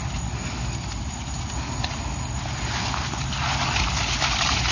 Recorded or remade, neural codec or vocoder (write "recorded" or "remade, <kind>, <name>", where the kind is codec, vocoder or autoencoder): recorded